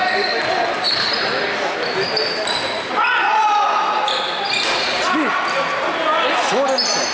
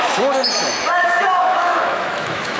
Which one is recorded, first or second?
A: first